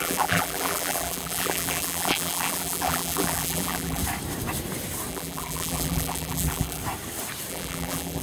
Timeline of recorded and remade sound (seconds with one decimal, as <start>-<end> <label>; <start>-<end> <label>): 0.0-4.0 remade; 4.0-5.1 recorded; 5.1-6.8 remade; 6.8-7.5 recorded; 7.5-8.2 remade